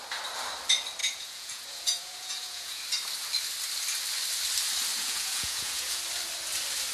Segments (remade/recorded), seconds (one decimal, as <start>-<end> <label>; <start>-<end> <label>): 0.0-1.0 recorded; 1.0-2.8 remade; 2.8-4.9 recorded; 4.9-6.0 remade; 6.0-6.9 recorded